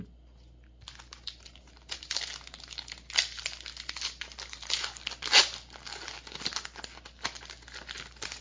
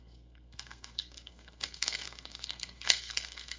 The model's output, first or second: second